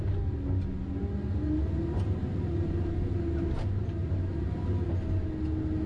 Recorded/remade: recorded